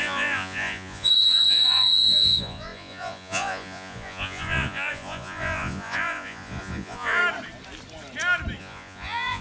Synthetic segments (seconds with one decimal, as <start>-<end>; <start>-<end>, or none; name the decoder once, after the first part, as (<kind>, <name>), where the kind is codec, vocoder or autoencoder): 0.0-7.2 (vocoder, Vocos); 8.6-9.4